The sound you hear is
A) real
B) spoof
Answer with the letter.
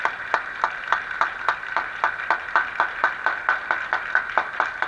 A